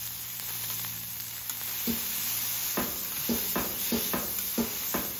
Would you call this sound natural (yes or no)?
yes